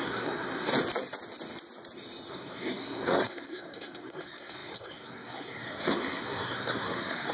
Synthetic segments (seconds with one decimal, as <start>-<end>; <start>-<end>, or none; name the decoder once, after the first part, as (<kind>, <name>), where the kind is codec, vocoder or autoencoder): 0.0-0.7 (codec, SNAC); 2.3-7.3